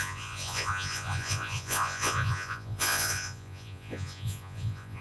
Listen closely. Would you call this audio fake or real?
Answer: fake